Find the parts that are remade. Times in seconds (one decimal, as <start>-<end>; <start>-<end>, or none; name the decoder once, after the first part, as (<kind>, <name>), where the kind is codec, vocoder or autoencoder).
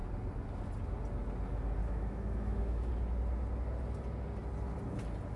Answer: 1.8-2.9 (autoencoder, DAC-VAE)